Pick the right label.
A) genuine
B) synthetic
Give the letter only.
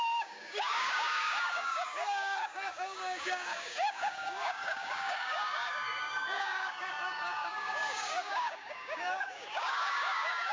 B